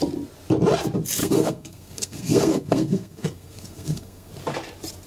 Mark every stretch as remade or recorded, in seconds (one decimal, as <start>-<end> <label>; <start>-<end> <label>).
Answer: 0.0-1.2 recorded; 1.2-4.3 remade; 4.3-5.1 recorded